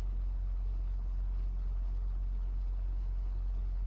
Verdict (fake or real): fake